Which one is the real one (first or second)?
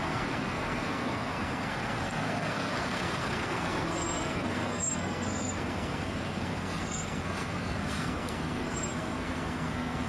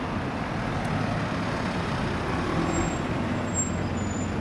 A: second